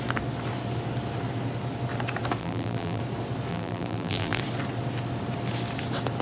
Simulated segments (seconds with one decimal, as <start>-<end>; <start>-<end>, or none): 2.4-3.0; 3.5-4.4

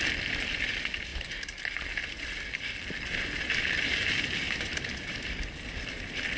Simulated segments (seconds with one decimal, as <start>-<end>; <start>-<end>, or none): none